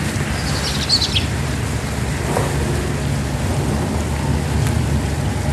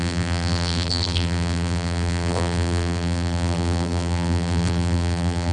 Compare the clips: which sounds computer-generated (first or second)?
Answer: second